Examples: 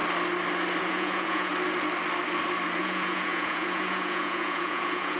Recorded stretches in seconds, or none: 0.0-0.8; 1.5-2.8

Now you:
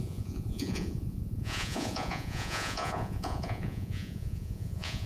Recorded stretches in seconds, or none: none

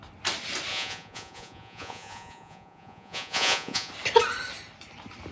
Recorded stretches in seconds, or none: 0.0-0.7; 3.9-5.3

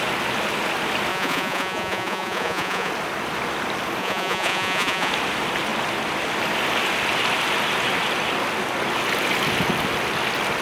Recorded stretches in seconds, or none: 0.0-1.1; 2.9-4.0; 5.1-10.6

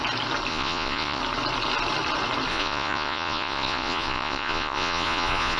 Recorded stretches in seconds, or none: 0.0-0.5; 1.2-2.5

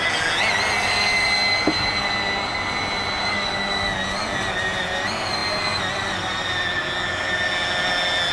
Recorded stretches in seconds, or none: 0.0-8.3